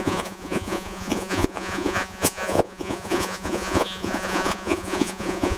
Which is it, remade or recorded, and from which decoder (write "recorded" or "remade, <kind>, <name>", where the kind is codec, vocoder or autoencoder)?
remade, vocoder, Vocos